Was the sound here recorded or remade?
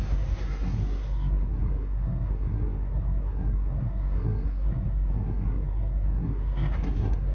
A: remade